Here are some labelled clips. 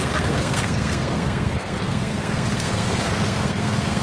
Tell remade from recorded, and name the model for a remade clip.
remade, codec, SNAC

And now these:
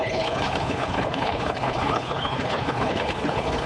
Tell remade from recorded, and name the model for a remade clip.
remade, codec, HILCodec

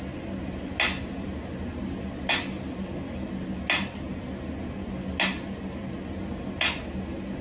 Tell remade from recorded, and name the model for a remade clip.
recorded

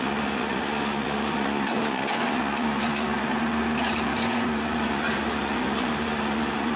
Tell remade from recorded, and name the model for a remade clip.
remade, vocoder, Vocos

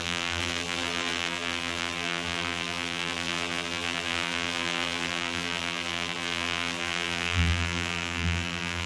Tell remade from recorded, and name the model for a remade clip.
remade, vocoder, BigVGAN v2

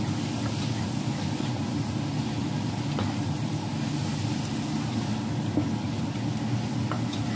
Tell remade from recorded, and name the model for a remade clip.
recorded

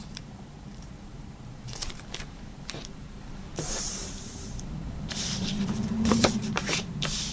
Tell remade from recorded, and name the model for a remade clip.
remade, vocoder, BigVGAN v2